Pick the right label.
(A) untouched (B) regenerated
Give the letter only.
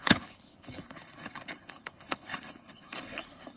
B